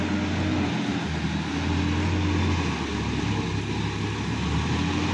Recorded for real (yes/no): yes